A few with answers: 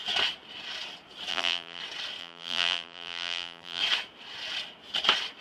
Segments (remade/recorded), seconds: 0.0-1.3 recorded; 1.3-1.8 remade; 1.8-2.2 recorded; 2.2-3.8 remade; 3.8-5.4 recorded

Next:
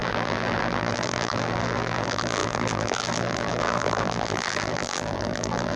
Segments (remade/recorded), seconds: 0.0-5.8 remade

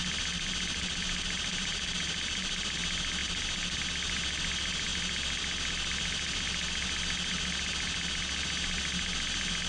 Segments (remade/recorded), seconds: 0.0-2.8 remade; 2.8-3.2 recorded; 3.2-3.8 remade; 3.8-9.7 recorded

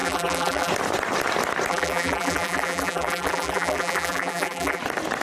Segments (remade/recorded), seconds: 0.0-0.7 remade; 0.7-1.7 recorded; 1.7-4.8 remade; 4.8-5.2 recorded

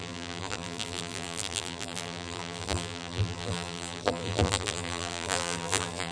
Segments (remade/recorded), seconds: 0.0-6.1 remade

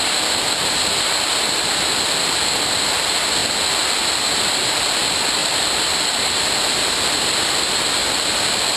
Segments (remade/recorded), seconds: 0.0-5.4 recorded; 5.4-6.6 remade; 6.6-8.8 recorded